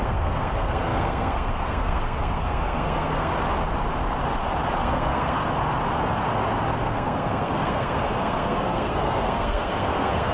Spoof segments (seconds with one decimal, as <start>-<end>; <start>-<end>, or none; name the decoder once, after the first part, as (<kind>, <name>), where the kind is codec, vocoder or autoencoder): 0.0-3.3 (codec, SNAC); 4.7-5.4; 6.8-10.3